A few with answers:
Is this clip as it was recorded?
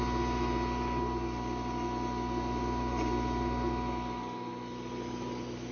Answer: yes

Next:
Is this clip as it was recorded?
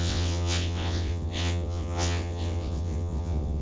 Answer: no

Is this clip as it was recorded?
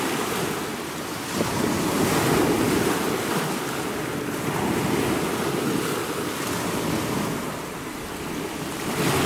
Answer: yes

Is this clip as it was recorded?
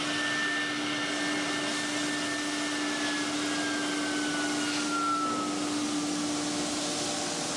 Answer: yes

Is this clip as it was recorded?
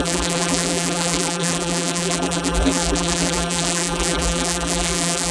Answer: no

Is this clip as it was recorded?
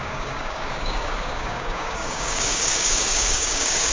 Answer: no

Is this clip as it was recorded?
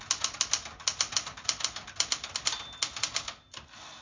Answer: yes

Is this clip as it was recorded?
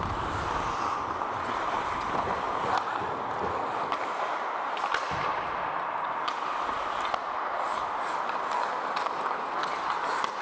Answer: yes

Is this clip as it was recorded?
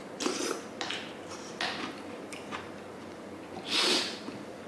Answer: yes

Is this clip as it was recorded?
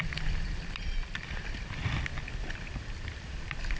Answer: no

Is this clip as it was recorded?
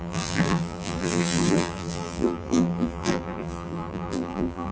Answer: no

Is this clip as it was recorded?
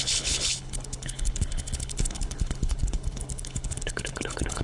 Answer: no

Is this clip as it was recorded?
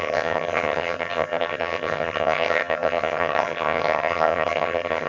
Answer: no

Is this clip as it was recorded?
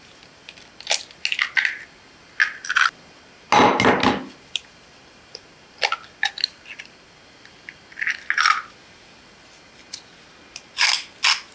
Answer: yes